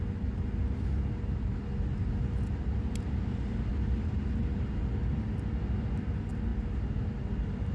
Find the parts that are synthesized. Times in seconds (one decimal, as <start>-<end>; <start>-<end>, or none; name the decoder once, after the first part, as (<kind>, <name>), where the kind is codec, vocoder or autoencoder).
none